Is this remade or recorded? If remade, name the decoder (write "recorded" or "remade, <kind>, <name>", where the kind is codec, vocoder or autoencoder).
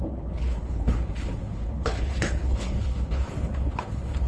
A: remade, codec, HILCodec